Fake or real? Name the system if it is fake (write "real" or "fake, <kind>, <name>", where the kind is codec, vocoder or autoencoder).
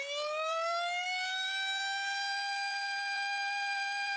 fake, vocoder, BigVGAN v2